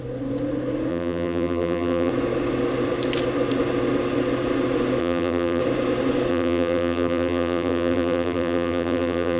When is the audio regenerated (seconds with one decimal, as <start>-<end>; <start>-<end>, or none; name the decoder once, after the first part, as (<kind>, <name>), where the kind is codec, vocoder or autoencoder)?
0.9-2.1 (vocoder, BigVGAN v2); 5.0-5.6; 6.3-9.4